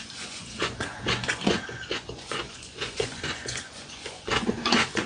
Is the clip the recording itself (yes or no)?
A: no